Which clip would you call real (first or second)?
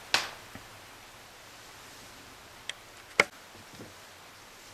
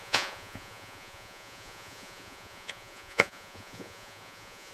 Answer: first